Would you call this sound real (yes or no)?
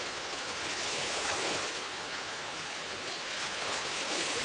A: no